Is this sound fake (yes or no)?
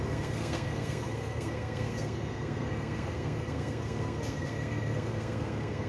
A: yes